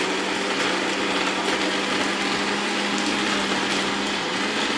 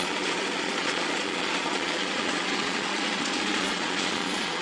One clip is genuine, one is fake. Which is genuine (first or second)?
first